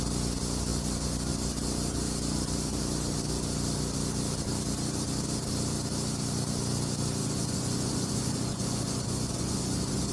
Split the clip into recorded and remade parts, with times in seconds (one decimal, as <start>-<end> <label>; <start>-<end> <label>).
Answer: 0.0-7.2 recorded; 7.2-10.1 remade